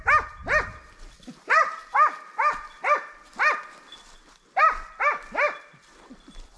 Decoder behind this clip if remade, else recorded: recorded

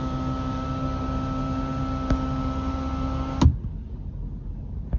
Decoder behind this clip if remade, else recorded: recorded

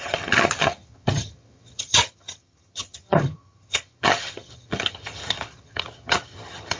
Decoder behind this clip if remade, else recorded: remade, vocoder, HiFi-GAN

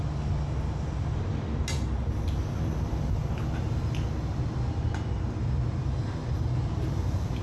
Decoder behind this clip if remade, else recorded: recorded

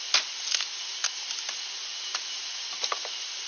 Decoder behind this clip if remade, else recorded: recorded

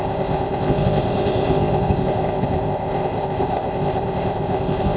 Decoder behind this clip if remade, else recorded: remade, codec, ZipCodec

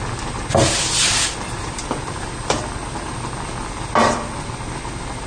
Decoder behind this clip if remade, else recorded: recorded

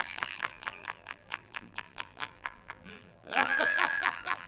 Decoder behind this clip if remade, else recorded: remade, vocoder, BigVGAN v2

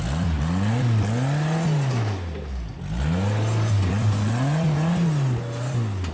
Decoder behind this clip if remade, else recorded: recorded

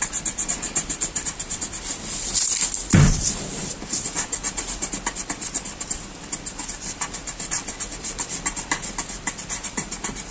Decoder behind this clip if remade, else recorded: remade, vocoder, BigVGAN v2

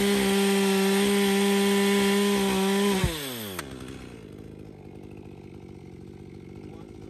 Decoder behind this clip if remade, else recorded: recorded